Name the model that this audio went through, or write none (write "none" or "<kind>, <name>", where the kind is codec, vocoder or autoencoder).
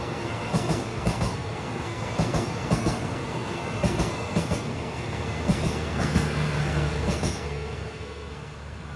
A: codec, SNAC